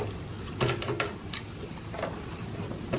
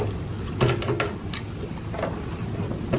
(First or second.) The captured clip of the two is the second